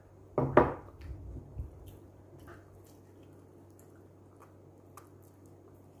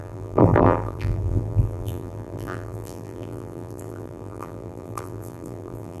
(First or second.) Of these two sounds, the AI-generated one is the second